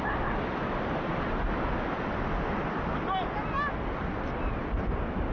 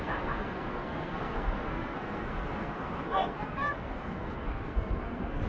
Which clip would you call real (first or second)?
first